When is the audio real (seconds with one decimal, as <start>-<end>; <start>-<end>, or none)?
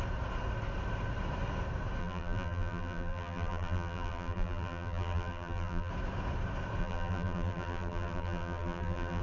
0.0-2.0; 5.9-6.8